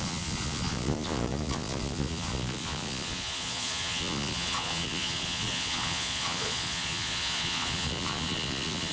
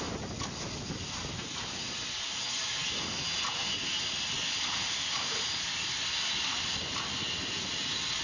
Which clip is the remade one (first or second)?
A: first